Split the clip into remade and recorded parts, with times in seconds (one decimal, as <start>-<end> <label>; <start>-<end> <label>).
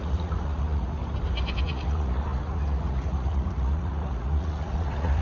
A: 0.0-1.0 remade; 1.0-1.6 recorded; 1.6-5.2 remade